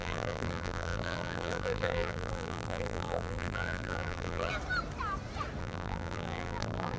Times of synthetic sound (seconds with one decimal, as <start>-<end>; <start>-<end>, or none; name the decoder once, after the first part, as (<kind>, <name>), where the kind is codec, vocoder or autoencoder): 0.0-4.5 (vocoder, BigVGAN v2); 5.6-7.0